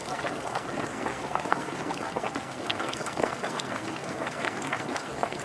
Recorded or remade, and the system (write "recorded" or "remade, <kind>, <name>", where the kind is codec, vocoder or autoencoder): remade, codec, SNAC